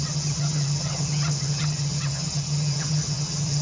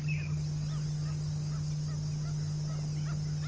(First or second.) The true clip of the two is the second